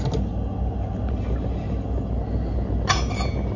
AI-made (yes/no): no